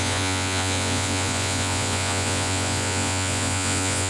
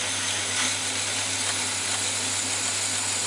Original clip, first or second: second